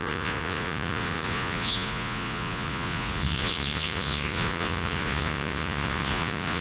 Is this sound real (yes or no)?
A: no